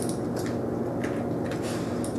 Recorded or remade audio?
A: recorded